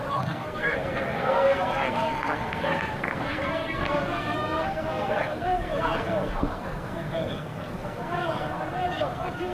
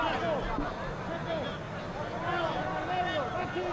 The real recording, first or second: second